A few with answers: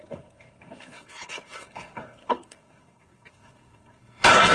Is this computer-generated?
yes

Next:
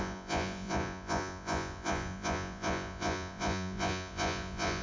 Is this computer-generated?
yes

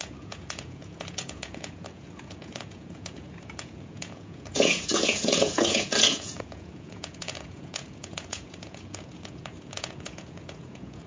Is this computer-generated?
yes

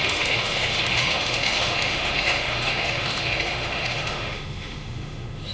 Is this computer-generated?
yes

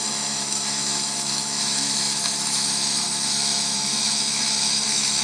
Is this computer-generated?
yes